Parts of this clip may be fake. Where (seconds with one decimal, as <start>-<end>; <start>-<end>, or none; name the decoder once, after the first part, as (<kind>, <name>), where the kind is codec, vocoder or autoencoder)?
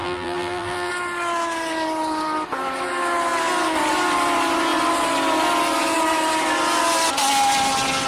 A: 0.0-0.9 (vocoder, BigVGAN v2)